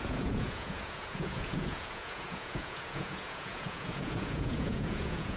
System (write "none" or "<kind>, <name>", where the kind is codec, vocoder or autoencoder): vocoder, Vocos